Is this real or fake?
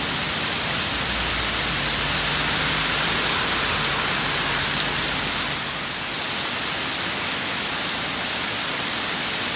real